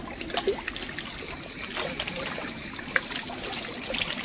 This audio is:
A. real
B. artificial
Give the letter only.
A